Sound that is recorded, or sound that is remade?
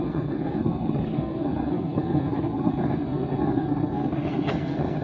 remade